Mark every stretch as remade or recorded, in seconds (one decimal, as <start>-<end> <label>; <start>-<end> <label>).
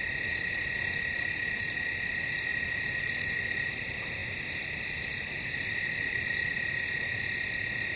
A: 0.0-8.0 recorded